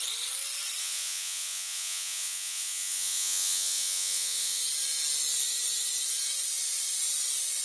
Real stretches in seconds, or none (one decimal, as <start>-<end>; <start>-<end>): 0.0-0.8; 4.6-7.6